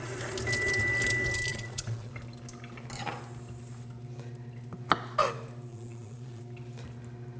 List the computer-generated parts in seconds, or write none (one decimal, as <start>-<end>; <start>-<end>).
1.5-2.1; 5.7-6.4